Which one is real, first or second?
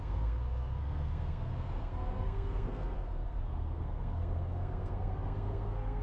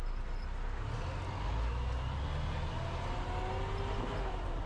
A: second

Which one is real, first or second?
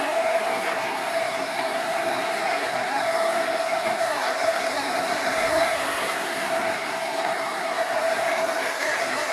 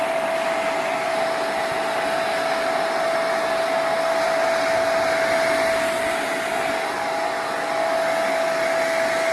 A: second